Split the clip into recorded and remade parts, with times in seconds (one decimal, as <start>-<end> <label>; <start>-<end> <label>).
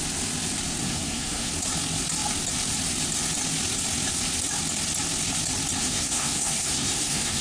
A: 0.0-0.8 recorded; 0.8-1.5 remade; 1.5-5.8 recorded; 5.8-7.4 remade